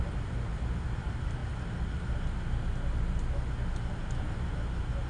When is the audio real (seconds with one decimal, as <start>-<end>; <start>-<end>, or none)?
0.0-5.1